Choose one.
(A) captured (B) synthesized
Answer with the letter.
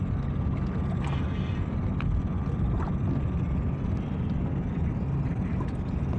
A